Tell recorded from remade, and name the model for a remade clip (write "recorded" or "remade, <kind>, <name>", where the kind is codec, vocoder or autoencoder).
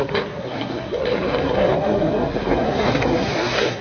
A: remade, codec, SNAC